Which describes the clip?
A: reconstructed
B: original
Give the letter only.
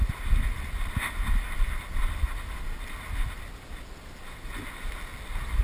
B